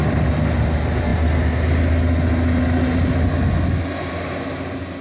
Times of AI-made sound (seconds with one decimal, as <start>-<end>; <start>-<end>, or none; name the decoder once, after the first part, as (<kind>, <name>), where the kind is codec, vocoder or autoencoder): none